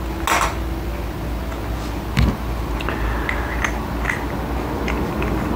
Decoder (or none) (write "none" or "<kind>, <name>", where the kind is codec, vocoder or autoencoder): none